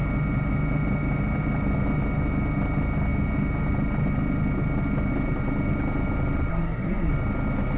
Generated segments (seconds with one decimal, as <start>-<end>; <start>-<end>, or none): 6.5-7.1